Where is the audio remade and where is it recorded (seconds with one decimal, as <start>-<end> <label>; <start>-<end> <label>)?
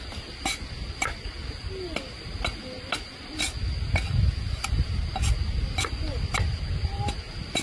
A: 0.0-7.6 recorded